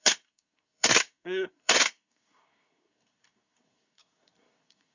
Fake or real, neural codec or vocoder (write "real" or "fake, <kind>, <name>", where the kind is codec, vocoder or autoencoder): fake, codec, SNAC